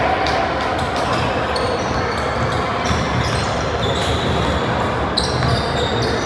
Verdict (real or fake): real